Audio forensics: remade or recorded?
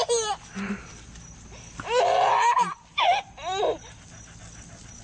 recorded